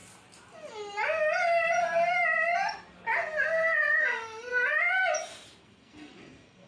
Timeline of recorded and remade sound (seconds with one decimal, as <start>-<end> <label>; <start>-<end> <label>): 0.0-4.0 recorded; 4.0-4.5 remade; 4.5-5.6 recorded; 5.6-6.7 remade